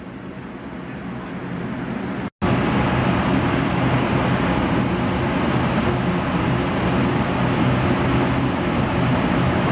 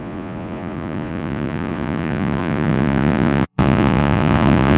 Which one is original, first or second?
first